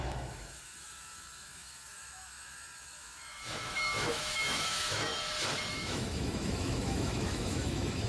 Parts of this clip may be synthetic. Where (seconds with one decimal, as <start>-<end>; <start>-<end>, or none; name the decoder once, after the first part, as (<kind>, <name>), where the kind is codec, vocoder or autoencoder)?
0.0-5.1 (autoencoder, DAC-VAE); 5.7-8.1

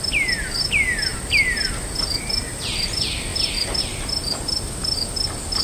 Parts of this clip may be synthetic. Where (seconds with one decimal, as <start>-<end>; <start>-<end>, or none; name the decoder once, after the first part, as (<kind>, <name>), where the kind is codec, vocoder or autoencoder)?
none

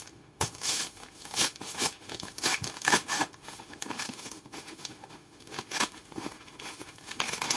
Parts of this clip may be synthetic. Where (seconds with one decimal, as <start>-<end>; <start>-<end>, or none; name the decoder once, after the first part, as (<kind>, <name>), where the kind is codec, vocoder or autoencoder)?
0.0-7.6 (autoencoder, DAC-VAE)

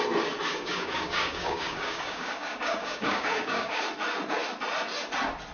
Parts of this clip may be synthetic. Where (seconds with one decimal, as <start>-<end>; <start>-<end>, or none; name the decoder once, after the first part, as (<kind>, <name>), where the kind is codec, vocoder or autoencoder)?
0.5-3.8 (codec, DAC)

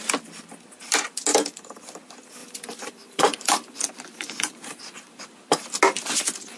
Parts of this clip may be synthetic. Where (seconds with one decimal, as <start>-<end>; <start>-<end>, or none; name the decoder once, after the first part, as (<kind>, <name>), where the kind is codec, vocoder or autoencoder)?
1.3-1.8 (vocoder, BigVGAN v2); 2.4-5.2